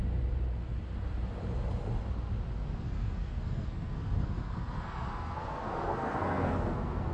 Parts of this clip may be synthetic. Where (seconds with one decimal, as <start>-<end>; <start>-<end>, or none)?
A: 2.8-7.1